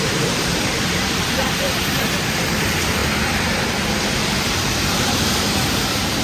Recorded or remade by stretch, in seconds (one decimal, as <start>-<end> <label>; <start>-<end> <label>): 0.0-3.0 remade; 3.0-3.6 recorded; 3.6-6.2 remade